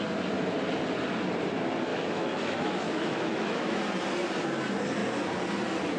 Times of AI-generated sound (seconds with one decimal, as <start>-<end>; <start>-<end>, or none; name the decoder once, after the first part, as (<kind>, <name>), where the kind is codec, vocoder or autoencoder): 1.9-3.8 (autoencoder, DAC-VAE)